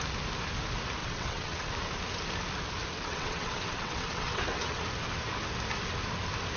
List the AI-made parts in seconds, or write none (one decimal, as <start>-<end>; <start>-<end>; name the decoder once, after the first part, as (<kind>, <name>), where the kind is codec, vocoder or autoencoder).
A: 1.0-1.7 (vocoder, WaveNeXt); 2.9-4.8